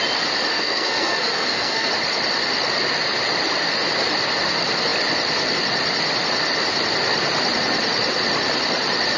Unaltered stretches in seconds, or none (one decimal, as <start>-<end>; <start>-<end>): 0.0-0.5; 1.9-9.2